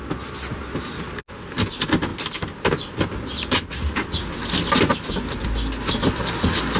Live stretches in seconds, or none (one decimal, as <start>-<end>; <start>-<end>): 0.0-6.8